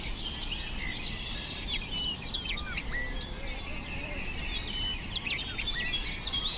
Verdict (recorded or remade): recorded